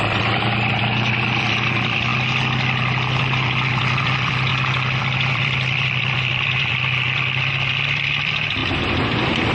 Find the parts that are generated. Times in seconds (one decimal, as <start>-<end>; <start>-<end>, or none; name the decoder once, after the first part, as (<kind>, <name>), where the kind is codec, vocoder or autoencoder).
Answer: 0.0-2.1 (vocoder, BigVGAN v2); 3.2-4.5; 5.0-8.6